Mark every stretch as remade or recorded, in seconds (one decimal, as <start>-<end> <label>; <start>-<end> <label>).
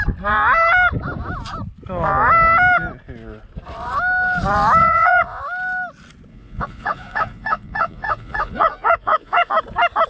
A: 0.0-4.8 recorded; 4.8-5.4 remade; 5.4-6.3 recorded; 6.3-9.5 remade; 9.5-10.1 recorded